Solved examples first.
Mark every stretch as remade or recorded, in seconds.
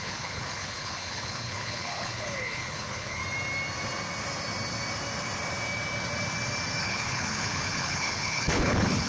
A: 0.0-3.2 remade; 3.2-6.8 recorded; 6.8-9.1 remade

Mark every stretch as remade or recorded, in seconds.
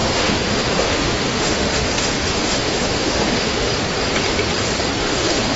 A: 0.0-3.7 remade; 3.7-5.0 recorded; 5.0-5.6 remade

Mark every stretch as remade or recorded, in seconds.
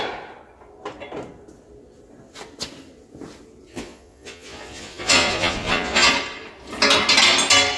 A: 0.0-3.7 recorded; 3.7-6.1 remade; 6.1-7.8 recorded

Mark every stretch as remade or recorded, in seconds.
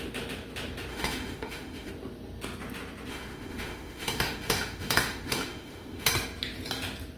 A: 0.0-0.9 recorded; 0.9-1.9 remade; 1.9-3.1 recorded; 3.1-6.1 remade; 6.1-7.2 recorded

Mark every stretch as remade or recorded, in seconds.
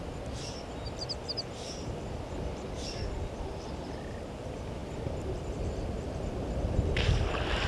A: 0.0-7.7 recorded